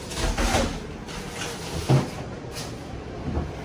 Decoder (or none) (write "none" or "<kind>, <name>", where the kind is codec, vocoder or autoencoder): none